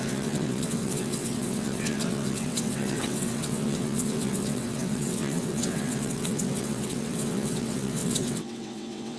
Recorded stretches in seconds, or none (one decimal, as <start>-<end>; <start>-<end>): none